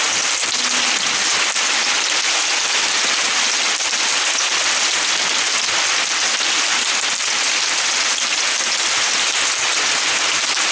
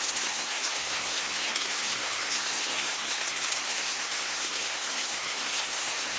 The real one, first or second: first